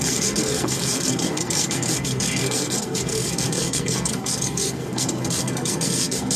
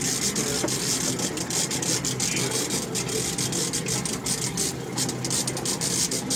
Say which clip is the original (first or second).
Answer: second